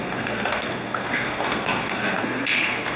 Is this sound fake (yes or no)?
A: yes